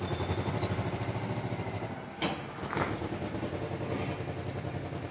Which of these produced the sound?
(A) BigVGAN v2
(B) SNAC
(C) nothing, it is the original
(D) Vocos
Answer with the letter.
C